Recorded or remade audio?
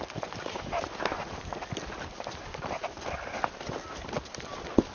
remade